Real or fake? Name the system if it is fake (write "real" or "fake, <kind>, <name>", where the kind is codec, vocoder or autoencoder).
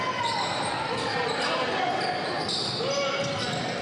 real